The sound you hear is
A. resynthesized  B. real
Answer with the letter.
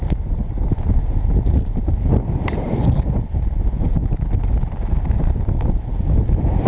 B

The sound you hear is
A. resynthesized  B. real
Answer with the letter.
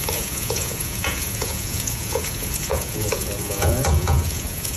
A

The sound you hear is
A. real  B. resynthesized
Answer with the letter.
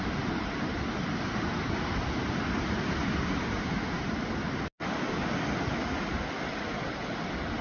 A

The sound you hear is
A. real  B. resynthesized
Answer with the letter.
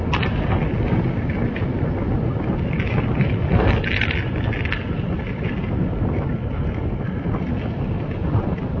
A